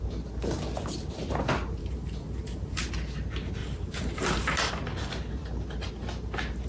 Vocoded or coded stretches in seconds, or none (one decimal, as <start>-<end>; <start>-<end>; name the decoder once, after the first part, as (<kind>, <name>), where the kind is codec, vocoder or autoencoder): 1.8-2.9 (vocoder, BigVGAN v2); 3.6-4.7